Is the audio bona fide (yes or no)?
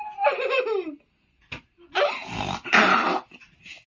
yes